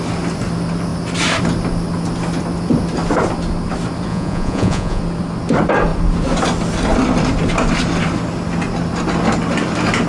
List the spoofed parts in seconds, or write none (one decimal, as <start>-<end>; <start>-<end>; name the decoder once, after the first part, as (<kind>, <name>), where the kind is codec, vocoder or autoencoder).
4.1-5.0 (vocoder, Vocos)